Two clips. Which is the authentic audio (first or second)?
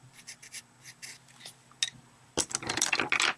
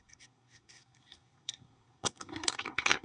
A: first